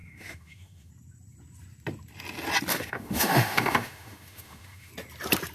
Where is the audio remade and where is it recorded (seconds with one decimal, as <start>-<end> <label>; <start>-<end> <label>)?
0.0-0.9 remade; 0.9-2.7 recorded; 2.7-4.9 remade; 4.9-5.5 recorded